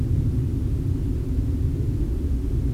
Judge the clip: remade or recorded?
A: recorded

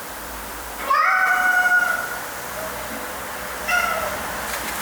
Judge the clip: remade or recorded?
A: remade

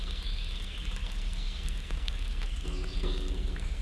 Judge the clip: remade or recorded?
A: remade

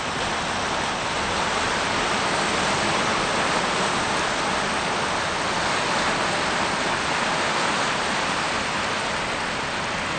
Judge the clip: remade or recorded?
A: recorded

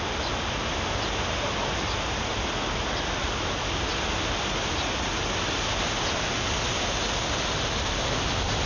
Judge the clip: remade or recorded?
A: recorded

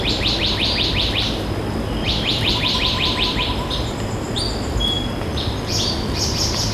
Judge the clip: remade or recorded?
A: recorded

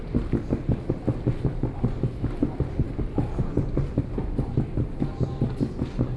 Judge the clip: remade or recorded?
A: recorded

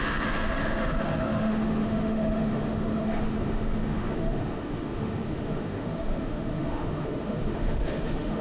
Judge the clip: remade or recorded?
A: remade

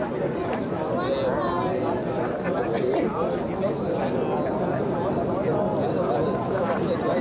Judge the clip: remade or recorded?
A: recorded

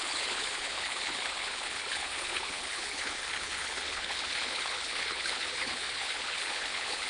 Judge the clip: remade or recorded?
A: remade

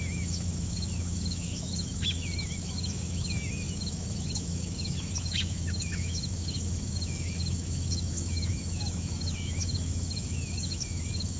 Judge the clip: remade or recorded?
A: remade